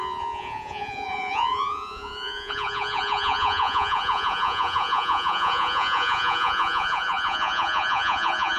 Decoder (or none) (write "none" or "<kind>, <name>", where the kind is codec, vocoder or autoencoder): vocoder, Vocos